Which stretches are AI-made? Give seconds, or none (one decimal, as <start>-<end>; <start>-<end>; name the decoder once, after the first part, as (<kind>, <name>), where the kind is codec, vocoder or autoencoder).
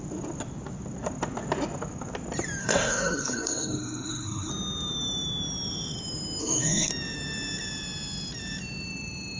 2.6-4.5 (codec, SNAC); 6.4-6.9